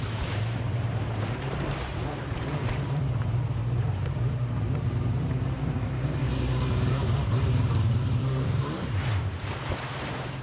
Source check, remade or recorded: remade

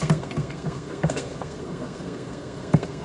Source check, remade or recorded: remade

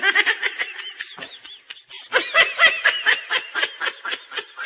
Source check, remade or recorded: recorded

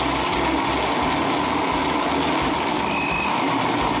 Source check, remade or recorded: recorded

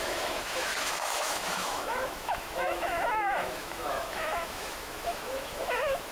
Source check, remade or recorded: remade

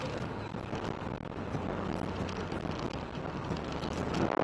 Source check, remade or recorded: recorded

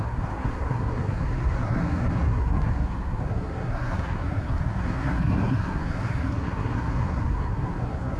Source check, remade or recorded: remade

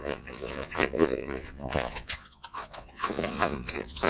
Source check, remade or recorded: remade